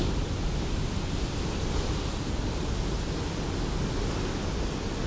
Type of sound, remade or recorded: recorded